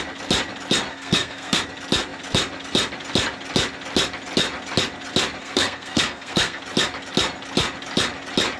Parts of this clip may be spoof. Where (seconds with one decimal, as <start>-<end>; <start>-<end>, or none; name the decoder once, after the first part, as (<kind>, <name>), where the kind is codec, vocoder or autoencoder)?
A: 0.9-1.6 (codec, SNAC); 5.4-6.6